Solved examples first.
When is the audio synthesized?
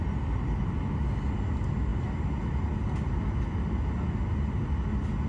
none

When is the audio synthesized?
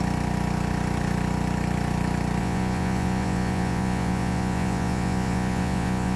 2.4-6.2 (vocoder, Vocos)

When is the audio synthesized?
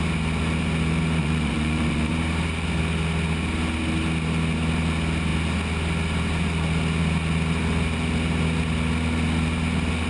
1.2-2.1 (vocoder, Vocos)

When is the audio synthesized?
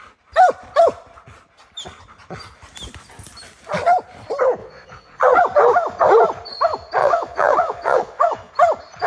4.6-5.4 (vocoder, Vocos); 7.0-8.5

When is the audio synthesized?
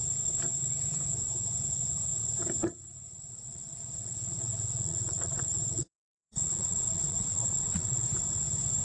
3.3-8.1 (vocoder, Vocos)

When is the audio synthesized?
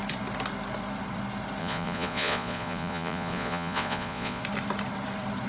1.6-4.4 (vocoder, Vocos)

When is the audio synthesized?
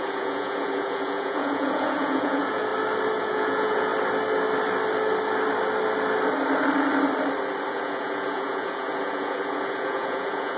0.0-2.7 (vocoder, Vocos); 3.2-3.9; 7.7-10.6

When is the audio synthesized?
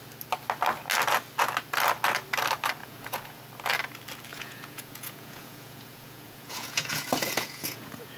2.8-3.4 (vocoder, Vocos); 4.3-8.2